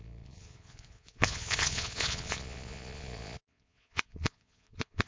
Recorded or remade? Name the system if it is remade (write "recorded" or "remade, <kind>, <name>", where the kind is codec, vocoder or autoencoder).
remade, vocoder, Vocos